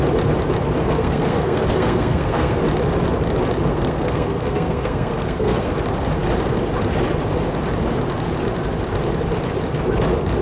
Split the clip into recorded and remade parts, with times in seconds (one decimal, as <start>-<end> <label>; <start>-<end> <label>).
0.0-0.8 recorded; 0.8-2.6 remade; 2.6-3.7 recorded; 3.7-5.7 remade; 5.7-10.4 recorded